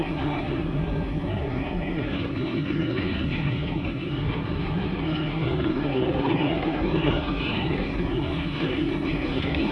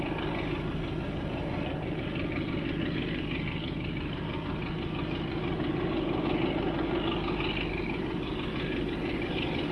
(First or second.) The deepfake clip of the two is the first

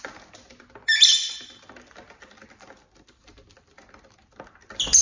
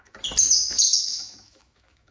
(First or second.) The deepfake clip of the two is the second